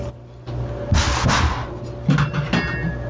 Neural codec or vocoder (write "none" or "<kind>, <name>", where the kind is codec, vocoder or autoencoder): none